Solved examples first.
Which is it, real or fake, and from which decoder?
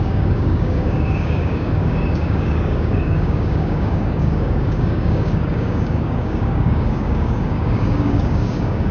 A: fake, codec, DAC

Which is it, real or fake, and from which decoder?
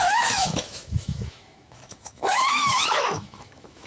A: fake, autoencoder, DAC-VAE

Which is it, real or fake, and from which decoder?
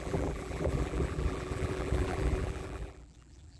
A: fake, vocoder, BigVGAN v2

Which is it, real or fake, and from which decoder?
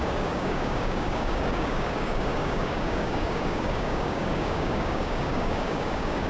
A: fake, codec, DAC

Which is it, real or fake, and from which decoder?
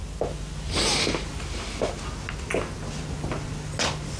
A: real